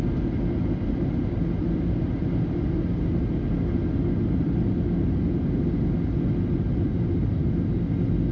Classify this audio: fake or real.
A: real